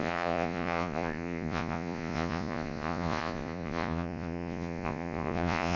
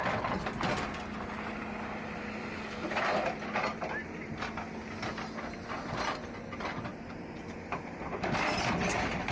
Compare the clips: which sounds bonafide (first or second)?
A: second